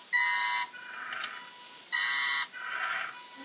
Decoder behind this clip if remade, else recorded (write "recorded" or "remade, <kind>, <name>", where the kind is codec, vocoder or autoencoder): recorded